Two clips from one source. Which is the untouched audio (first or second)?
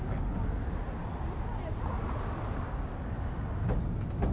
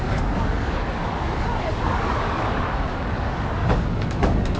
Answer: first